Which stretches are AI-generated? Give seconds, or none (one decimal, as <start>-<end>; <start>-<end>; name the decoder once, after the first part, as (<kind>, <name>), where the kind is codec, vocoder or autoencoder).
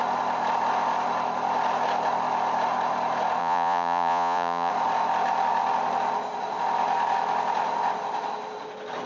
3.4-4.7 (vocoder, Vocos)